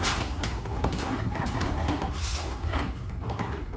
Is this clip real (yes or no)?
no